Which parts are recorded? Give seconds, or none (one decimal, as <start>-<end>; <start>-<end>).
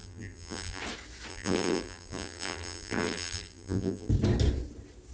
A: 0.8-1.3; 4.1-5.1